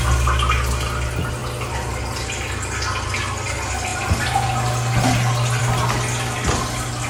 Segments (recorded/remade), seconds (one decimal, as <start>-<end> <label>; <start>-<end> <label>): 0.0-7.1 recorded